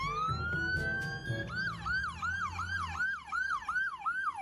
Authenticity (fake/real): real